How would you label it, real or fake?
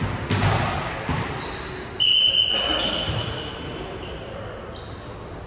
real